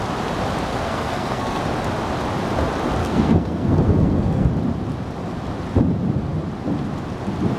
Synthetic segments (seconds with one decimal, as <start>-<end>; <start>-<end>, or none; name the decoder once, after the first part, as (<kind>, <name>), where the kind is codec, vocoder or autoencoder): 0.7-1.6 (codec, SNAC); 3.0-4.5